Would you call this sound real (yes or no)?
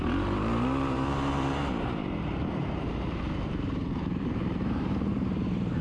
no